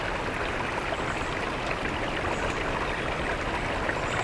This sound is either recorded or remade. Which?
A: recorded